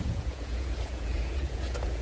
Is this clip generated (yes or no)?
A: yes